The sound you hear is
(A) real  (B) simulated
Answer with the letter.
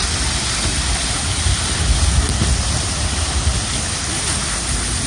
A